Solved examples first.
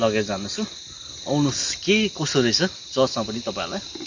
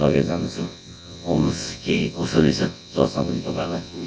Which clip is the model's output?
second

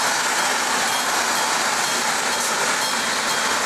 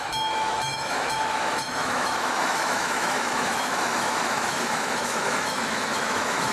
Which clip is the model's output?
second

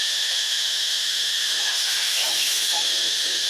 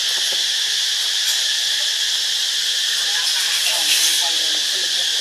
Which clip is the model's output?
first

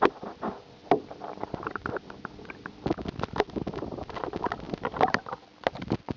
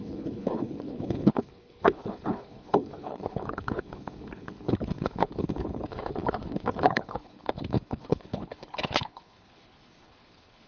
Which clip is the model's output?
second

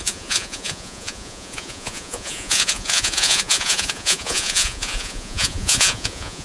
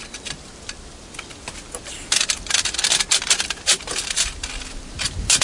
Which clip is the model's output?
first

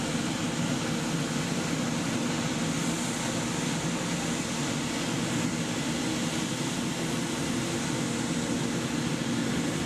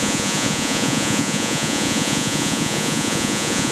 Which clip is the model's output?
second